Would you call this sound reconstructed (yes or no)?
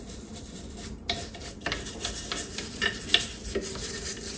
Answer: no